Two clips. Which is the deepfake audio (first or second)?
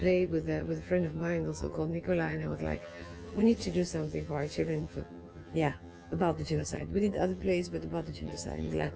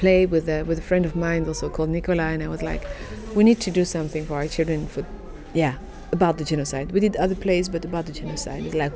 first